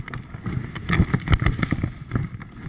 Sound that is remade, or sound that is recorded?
recorded